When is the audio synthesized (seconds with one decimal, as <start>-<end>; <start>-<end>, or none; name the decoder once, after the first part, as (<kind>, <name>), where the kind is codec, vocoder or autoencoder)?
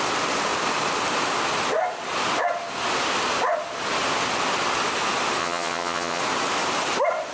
5.4-6.2 (vocoder, HiFi-GAN)